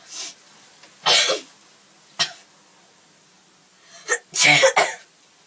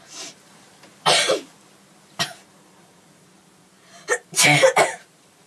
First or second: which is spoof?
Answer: second